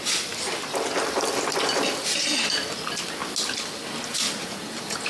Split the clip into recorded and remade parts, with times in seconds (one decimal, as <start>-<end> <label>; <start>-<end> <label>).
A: 0.0-4.4 recorded; 4.4-5.1 remade